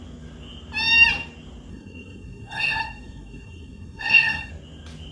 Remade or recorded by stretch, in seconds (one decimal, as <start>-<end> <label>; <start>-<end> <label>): 0.0-1.7 recorded; 1.7-4.5 remade; 4.5-5.1 recorded